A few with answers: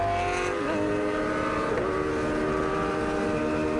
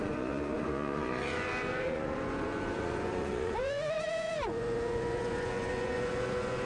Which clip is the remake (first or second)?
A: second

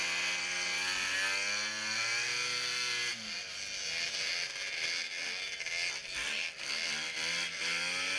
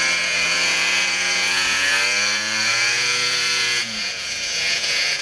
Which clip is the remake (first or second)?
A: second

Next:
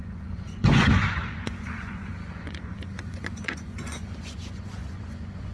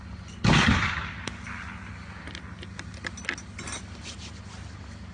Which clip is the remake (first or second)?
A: first